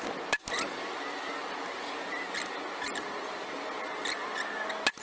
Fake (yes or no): no